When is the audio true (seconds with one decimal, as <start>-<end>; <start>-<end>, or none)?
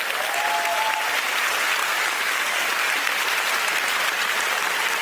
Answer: 0.0-1.8; 2.9-5.0